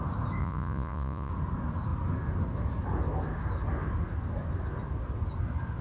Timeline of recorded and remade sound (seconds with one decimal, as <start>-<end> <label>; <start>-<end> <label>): 0.0-0.4 recorded; 0.4-1.3 remade; 1.3-5.8 recorded